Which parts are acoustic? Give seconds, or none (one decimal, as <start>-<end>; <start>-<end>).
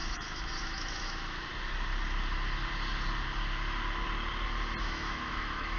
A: 1.5-4.8